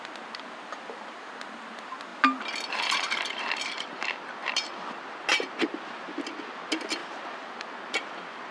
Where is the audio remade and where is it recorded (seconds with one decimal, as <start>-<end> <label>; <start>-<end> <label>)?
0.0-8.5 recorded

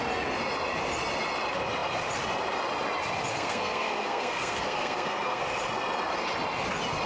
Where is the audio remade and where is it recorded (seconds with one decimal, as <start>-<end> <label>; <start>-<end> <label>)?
0.0-3.3 recorded; 3.3-5.4 remade; 5.4-7.1 recorded

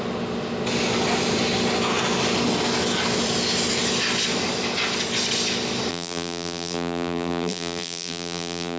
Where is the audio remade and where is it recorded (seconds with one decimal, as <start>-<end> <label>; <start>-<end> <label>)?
0.0-5.9 recorded; 5.9-8.8 remade

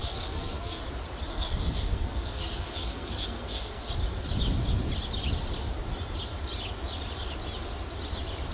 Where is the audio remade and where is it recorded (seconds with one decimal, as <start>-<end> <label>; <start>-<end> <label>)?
0.0-0.8 remade; 0.8-1.3 recorded; 1.3-3.9 remade; 3.9-8.5 recorded

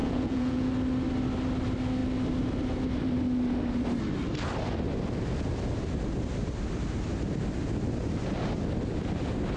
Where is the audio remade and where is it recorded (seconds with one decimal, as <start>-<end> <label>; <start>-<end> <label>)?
0.0-0.7 remade; 0.7-9.6 recorded